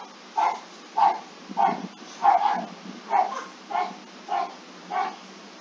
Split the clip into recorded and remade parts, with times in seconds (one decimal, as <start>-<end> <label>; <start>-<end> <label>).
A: 0.0-5.6 recorded